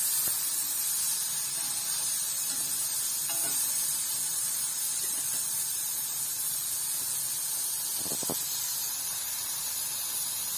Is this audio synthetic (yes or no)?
no